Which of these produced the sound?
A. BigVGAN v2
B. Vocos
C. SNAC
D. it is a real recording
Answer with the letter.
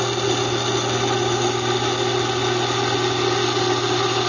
D